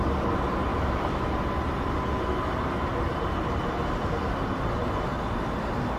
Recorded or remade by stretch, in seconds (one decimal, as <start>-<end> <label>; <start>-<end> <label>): 0.0-0.7 recorded; 0.7-1.3 remade; 1.3-6.0 recorded